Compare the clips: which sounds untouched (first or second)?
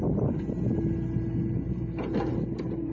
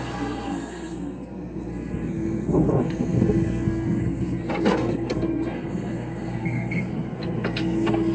first